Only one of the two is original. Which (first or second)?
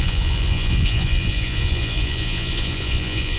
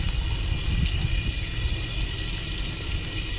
second